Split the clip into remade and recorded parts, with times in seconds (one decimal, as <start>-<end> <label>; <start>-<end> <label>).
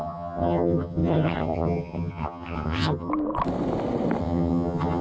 0.0-3.1 remade; 3.1-4.2 recorded; 4.2-5.0 remade